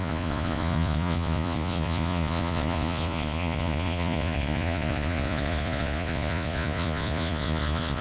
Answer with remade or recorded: remade